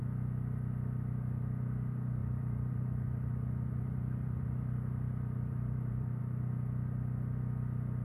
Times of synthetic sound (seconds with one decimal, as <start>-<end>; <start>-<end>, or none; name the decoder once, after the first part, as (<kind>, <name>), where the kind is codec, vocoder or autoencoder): 2.2-6.2 (vocoder, BigVGAN v2)